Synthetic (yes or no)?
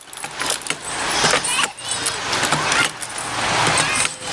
no